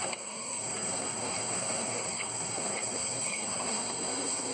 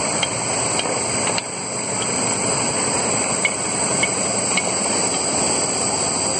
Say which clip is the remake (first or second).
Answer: first